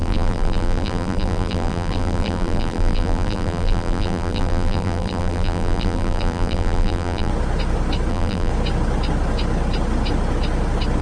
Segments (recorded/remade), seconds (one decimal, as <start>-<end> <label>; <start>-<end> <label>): 0.0-7.3 remade; 7.3-8.1 recorded; 8.1-8.5 remade; 8.5-11.0 recorded